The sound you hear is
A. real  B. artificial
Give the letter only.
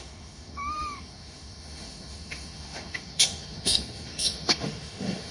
B